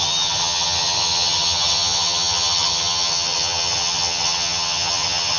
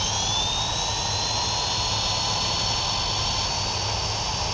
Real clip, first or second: second